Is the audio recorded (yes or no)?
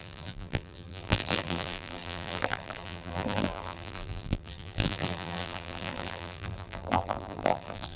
no